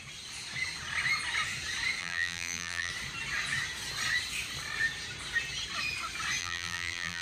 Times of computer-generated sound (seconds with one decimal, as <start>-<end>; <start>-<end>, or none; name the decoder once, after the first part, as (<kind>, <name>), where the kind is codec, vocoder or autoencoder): 2.0-2.9 (vocoder, BigVGAN v2); 6.4-7.2